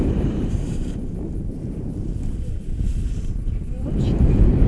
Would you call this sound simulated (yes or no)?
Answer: yes